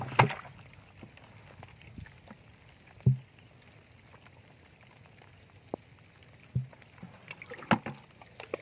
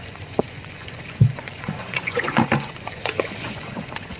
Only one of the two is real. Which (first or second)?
first